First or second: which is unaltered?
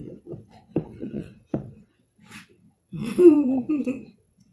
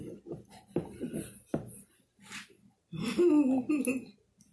second